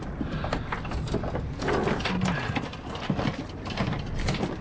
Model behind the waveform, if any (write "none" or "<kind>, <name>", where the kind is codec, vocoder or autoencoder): none